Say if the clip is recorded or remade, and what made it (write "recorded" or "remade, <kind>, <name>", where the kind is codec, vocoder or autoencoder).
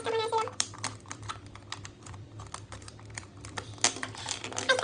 remade, vocoder, BigVGAN v2